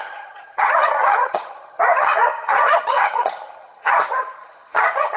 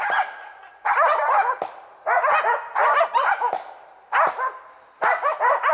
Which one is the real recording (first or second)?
second